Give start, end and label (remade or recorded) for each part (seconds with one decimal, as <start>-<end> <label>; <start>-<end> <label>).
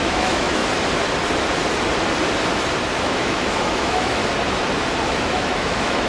0.0-0.6 remade; 0.6-3.0 recorded; 3.0-4.2 remade; 4.2-5.1 recorded; 5.1-6.1 remade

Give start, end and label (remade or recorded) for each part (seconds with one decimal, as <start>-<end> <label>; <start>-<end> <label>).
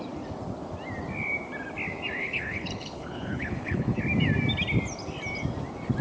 0.0-2.2 recorded; 2.2-4.0 remade; 4.0-6.0 recorded